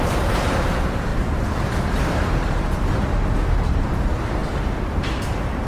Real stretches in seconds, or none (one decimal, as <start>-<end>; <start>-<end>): 1.1-3.7; 4.4-5.0